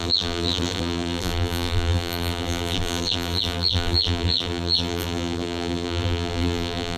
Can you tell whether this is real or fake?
fake